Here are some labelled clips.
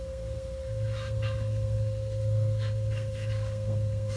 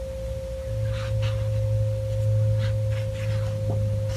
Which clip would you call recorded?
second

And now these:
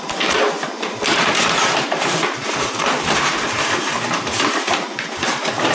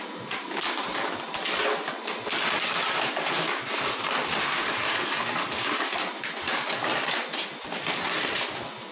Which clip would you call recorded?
second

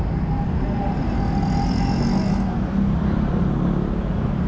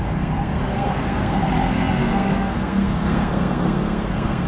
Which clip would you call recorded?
first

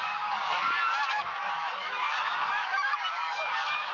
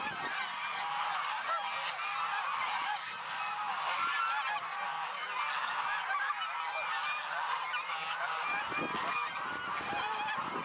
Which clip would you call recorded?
second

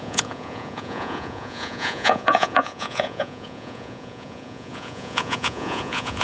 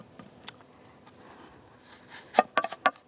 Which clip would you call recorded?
second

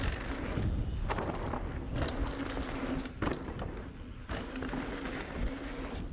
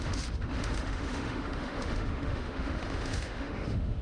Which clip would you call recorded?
first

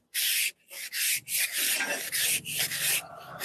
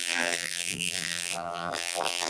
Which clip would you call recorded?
first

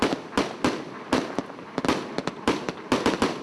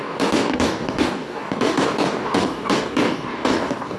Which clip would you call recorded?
first